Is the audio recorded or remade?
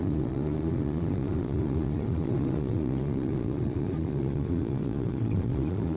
remade